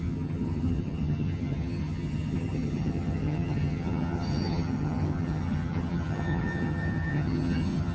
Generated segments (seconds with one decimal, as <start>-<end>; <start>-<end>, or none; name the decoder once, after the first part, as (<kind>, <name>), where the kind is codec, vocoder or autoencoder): 0.0-7.9 (vocoder, HiFi-GAN)